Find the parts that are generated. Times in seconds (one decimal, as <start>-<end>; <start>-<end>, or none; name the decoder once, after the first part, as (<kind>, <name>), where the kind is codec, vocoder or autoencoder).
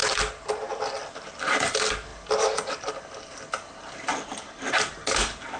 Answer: none